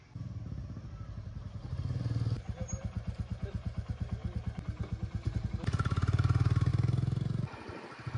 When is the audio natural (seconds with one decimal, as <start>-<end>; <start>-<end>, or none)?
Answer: 4.2-5.0; 6.7-8.2